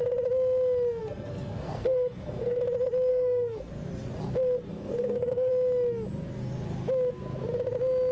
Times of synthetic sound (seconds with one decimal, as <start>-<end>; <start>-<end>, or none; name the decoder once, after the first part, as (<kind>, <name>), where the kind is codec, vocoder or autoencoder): 1.0-2.6 (codec, SNAC); 3.1-3.7; 4.7-5.5